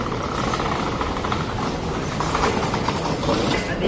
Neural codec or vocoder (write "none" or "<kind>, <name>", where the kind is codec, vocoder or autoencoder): none